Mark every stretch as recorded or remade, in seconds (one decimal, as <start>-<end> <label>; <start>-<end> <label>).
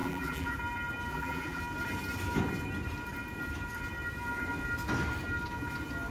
0.0-0.6 remade; 0.6-1.1 recorded; 1.1-1.6 remade; 1.6-6.1 recorded